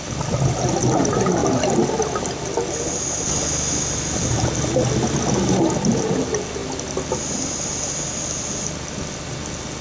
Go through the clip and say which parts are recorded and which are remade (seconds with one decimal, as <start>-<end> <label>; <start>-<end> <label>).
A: 0.0-9.8 recorded

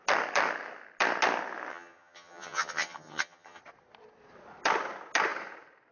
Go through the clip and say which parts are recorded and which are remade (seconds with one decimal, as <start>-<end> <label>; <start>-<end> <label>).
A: 0.0-1.7 recorded; 1.7-3.6 remade; 3.6-5.9 recorded

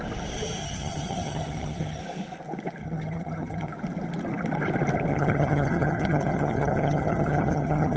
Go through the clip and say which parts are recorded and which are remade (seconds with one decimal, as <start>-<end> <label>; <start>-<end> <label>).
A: 0.0-0.6 recorded; 0.6-2.0 remade; 2.0-2.8 recorded; 2.8-3.7 remade; 3.7-5.1 recorded; 5.1-8.0 remade

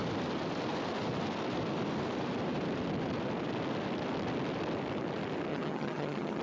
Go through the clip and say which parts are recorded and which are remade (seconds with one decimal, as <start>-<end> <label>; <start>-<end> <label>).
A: 0.0-5.5 recorded; 5.5-6.4 remade

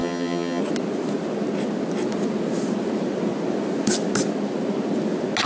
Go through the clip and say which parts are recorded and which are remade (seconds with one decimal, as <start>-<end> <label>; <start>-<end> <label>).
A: 0.0-0.6 remade; 0.6-5.5 recorded